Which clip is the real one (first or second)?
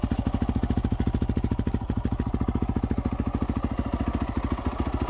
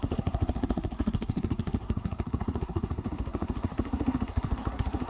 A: first